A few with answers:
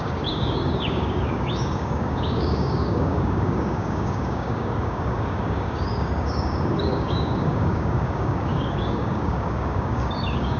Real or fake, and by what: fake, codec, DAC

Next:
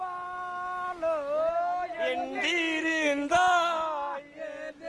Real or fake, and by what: real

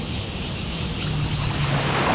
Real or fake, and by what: real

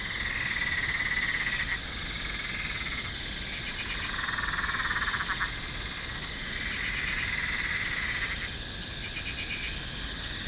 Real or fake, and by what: real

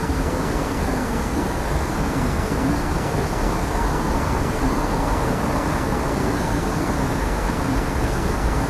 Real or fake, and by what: fake, codec, SNAC